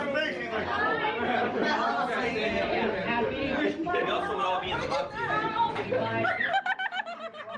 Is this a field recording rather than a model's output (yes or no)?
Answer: yes